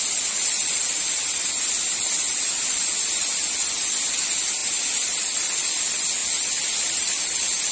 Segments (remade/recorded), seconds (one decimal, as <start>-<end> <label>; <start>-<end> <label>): 0.0-7.7 recorded